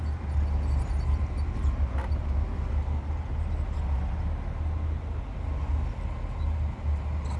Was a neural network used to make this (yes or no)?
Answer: no